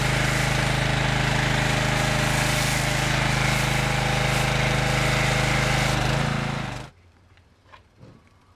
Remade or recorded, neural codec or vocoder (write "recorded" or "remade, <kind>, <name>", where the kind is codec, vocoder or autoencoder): recorded